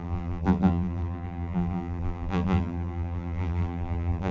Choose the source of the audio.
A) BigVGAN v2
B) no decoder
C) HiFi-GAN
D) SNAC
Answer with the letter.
A